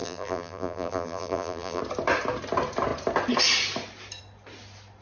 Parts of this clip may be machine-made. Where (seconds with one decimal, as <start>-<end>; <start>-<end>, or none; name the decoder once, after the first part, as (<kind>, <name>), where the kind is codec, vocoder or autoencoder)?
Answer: 0.0-1.8 (vocoder, BigVGAN v2)